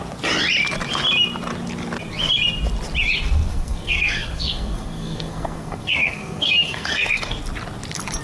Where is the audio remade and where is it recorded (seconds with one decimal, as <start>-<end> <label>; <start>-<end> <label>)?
0.0-3.5 recorded; 3.5-7.4 remade; 7.4-8.2 recorded